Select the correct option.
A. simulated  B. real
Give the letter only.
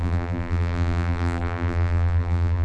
A